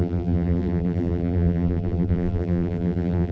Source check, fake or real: fake